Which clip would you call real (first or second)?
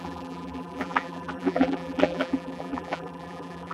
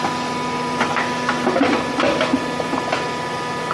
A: second